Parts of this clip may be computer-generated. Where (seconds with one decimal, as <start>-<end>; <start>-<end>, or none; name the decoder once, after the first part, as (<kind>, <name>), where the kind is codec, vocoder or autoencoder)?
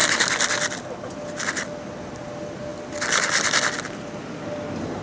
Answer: none